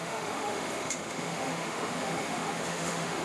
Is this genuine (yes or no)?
no